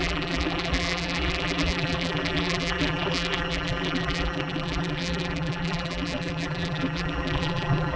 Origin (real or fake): fake